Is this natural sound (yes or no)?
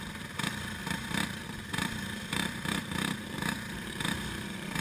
no